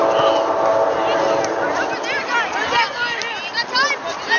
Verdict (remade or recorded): recorded